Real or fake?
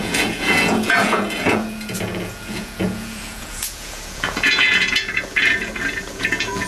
fake